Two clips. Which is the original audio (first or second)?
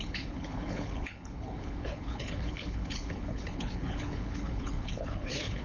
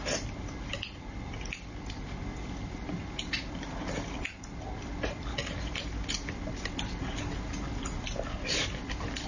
second